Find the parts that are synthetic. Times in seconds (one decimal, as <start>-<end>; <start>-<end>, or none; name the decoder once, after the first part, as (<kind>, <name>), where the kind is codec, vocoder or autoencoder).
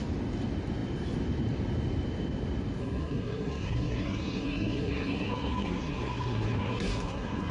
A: 2.8-7.5 (codec, SNAC)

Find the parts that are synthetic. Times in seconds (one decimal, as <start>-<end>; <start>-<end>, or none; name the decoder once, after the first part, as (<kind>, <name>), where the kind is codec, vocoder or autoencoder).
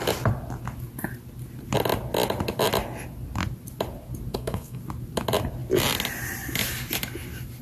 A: 4.3-4.8 (codec, SNAC)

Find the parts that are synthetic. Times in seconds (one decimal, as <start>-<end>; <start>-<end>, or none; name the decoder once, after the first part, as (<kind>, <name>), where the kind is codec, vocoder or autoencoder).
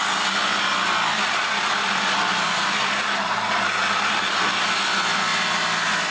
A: none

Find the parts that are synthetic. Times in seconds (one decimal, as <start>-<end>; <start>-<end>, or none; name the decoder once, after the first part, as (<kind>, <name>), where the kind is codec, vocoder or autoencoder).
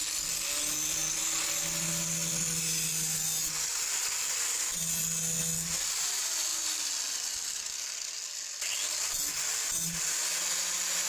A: none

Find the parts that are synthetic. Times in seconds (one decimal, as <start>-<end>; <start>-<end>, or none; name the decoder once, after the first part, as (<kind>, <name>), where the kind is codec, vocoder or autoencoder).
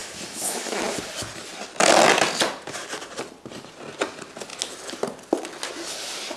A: 0.0-0.8 (autoencoder, DAC-VAE)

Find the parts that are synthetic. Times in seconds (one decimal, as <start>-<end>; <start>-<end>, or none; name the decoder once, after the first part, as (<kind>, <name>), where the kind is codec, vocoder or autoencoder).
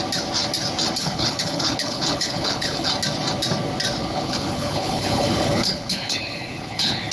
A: 1.0-2.9 (codec, HILCodec); 4.0-7.1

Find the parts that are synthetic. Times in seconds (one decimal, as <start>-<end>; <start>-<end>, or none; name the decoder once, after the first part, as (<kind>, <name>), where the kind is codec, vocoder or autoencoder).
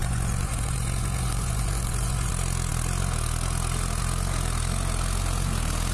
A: 0.0-2.3 (vocoder, Vocos)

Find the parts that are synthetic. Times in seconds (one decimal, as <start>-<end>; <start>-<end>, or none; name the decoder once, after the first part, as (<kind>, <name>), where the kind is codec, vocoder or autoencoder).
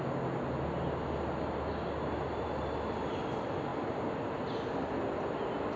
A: none